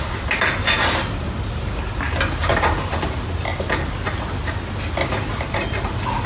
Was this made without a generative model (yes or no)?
yes